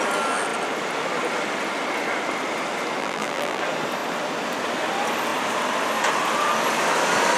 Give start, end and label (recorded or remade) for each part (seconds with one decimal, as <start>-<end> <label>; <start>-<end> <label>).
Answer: 0.0-3.0 recorded; 3.0-3.6 remade; 3.6-7.4 recorded